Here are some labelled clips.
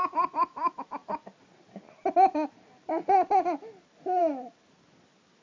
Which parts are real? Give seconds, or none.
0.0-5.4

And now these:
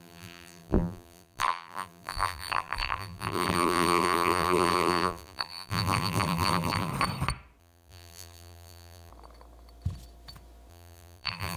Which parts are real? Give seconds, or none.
6.9-7.6; 9.1-10.7

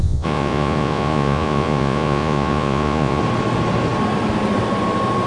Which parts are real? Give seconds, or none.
3.2-5.3

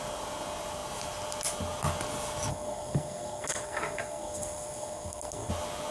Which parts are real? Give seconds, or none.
0.0-2.5; 5.5-5.9

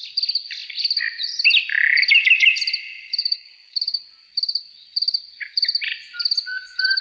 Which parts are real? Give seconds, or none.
0.0-3.2; 4.2-7.0